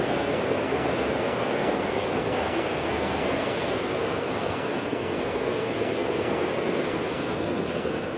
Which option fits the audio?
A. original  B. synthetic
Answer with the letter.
B